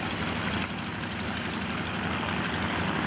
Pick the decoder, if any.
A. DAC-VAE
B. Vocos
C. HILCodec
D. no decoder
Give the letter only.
D